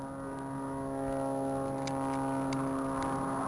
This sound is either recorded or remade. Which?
recorded